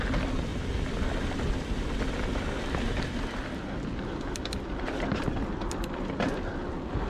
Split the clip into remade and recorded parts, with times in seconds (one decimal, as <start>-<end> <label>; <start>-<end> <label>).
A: 0.0-7.1 recorded